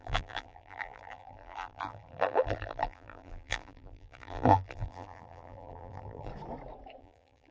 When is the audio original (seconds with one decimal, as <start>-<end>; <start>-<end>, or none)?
6.3-7.0